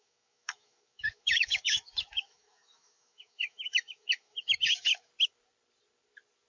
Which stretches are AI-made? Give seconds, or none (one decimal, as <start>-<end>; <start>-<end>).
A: 0.0-5.1